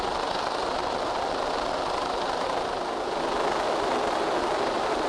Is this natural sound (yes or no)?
yes